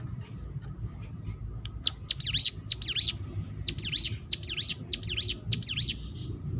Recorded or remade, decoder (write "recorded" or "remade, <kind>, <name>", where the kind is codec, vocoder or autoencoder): recorded